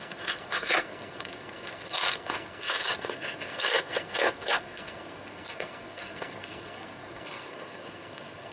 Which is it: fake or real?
fake